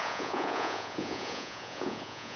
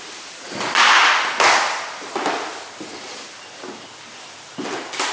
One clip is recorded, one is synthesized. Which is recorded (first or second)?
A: second